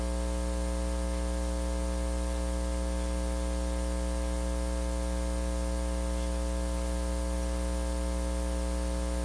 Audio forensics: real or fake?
real